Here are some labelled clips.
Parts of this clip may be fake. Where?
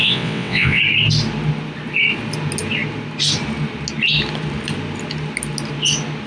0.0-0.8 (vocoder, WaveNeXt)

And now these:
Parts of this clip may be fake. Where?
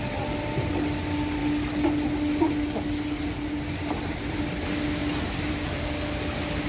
none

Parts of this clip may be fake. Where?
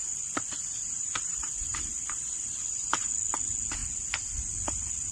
0.0-3.1 (vocoder, BigVGAN v2)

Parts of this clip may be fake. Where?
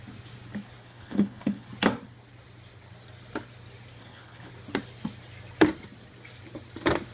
0.8-1.7 (codec, HILCodec); 4.0-4.5